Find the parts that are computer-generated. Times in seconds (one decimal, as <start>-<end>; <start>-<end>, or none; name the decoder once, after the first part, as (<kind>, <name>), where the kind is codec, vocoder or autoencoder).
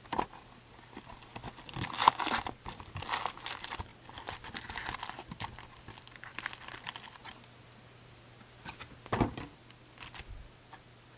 none